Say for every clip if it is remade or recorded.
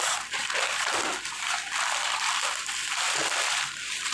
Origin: remade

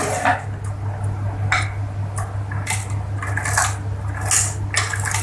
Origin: recorded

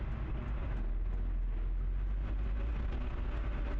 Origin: recorded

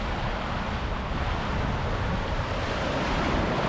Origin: recorded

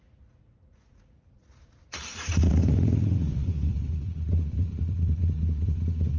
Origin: remade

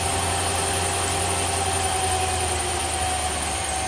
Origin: recorded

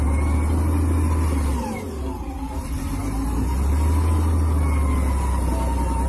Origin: recorded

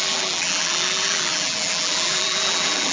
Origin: remade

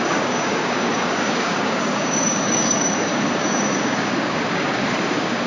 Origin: remade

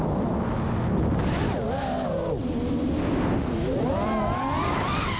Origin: recorded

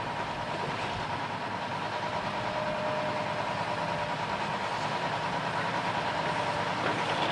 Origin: recorded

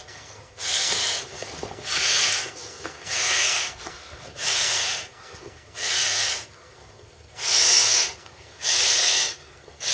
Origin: remade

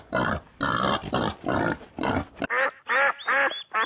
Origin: recorded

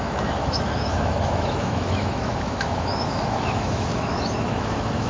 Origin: remade